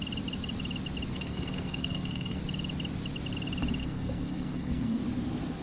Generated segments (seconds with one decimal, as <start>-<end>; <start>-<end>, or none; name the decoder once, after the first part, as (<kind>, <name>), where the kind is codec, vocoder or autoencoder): 1.1-2.4 (codec, SNAC); 3.8-5.0